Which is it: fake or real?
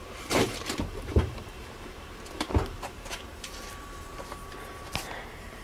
fake